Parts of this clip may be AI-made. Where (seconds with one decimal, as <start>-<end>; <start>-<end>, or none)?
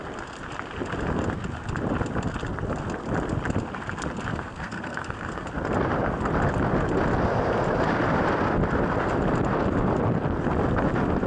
4.3-5.5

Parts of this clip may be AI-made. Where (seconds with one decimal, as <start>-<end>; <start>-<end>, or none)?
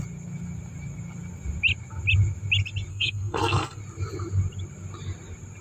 2.9-3.8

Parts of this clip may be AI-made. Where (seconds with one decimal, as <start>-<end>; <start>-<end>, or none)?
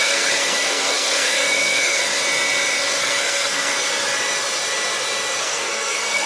0.0-2.1; 3.0-3.7; 5.4-6.3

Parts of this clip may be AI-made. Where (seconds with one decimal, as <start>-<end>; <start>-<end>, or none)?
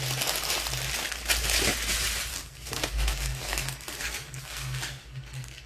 2.3-5.7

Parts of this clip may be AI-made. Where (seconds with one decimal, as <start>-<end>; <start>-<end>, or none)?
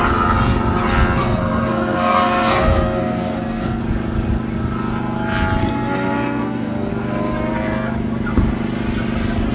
1.2-3.8; 5.6-6.9